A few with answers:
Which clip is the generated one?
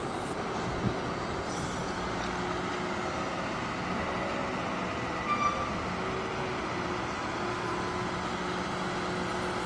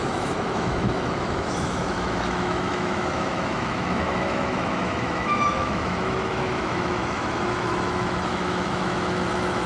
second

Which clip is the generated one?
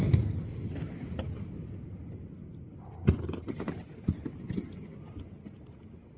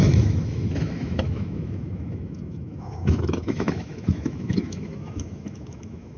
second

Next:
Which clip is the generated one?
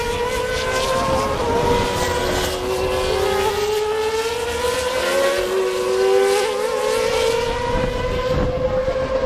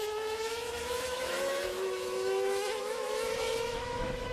second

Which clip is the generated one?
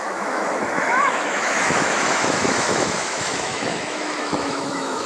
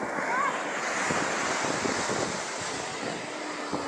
first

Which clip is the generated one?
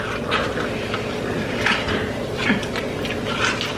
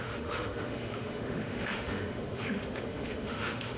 second